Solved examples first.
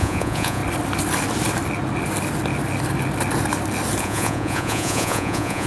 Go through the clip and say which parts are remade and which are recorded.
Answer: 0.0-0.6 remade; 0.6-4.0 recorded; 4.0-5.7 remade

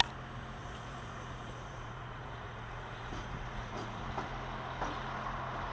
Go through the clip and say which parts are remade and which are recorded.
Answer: 0.0-0.6 recorded; 0.6-4.0 remade; 4.0-5.7 recorded

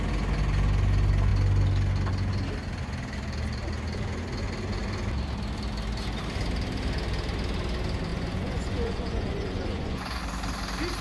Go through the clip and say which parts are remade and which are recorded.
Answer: 0.0-8.1 recorded; 8.1-10.2 remade; 10.2-11.0 recorded

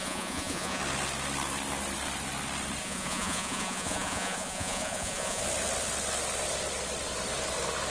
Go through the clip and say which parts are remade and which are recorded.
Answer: 0.0-0.8 remade; 0.8-2.8 recorded; 2.8-5.4 remade; 5.4-7.9 recorded

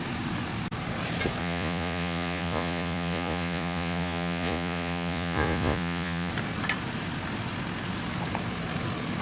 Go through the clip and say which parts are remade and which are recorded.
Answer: 0.0-1.4 recorded; 1.4-6.3 remade; 6.3-9.2 recorded

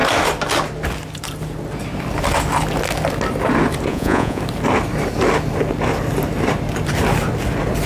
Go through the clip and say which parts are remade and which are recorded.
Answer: 0.0-3.9 recorded; 3.9-4.4 remade; 4.4-7.9 recorded

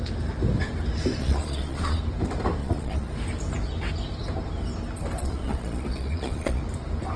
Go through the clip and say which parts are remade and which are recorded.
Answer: 0.0-1.2 recorded; 1.2-2.0 remade; 2.0-2.6 recorded; 2.6-3.1 remade; 3.1-5.2 recorded; 5.2-6.6 remade; 6.6-7.2 recorded

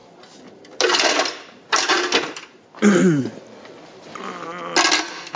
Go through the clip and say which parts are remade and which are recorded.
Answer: 0.0-5.4 recorded